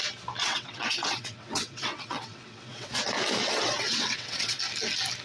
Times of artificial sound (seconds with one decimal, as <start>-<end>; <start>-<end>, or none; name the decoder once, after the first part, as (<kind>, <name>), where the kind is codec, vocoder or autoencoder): 0.4-2.9 (vocoder, WaveNeXt); 3.4-4.6